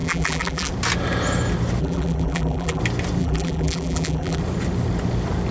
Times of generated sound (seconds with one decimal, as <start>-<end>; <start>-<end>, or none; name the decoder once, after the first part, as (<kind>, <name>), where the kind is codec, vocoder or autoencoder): 0.0-0.7 (vocoder, BigVGAN v2); 1.8-2.8; 3.2-4.4